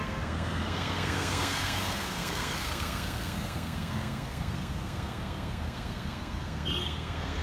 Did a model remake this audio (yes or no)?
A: yes